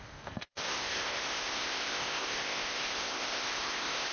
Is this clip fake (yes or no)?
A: yes